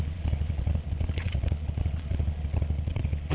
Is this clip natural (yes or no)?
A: no